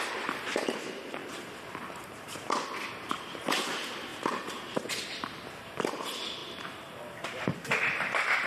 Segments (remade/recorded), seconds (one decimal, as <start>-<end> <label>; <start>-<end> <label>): 0.0-4.1 recorded; 4.1-5.2 remade; 5.2-6.4 recorded; 6.4-7.8 remade; 7.8-8.5 recorded